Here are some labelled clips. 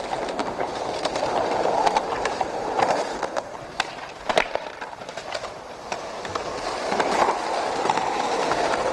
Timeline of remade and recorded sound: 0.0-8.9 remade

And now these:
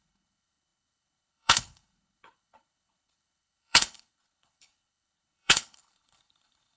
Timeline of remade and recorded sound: 0.0-6.8 remade

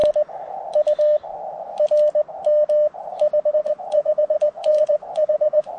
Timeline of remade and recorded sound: 0.0-3.5 recorded; 3.5-5.8 remade

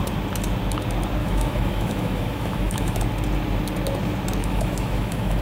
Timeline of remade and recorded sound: 0.0-1.2 recorded; 1.2-3.0 remade; 3.0-4.4 recorded; 4.4-5.4 remade

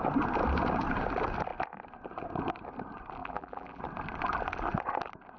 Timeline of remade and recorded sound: 0.0-3.2 recorded; 3.2-3.8 remade; 3.8-5.4 recorded

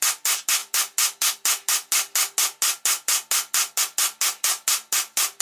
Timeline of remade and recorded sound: 0.0-5.4 recorded

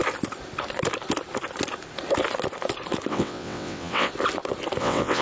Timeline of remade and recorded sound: 0.0-3.1 recorded; 3.1-4.1 remade; 4.1-4.8 recorded; 4.8-5.2 remade